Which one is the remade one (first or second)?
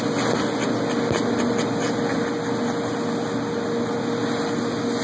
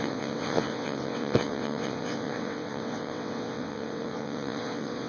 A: second